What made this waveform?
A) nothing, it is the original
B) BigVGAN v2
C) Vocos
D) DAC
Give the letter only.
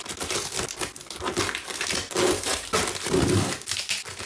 A